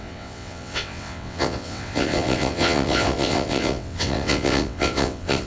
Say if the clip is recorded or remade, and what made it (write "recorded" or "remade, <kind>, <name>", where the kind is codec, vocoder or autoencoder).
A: remade, vocoder, WaveNeXt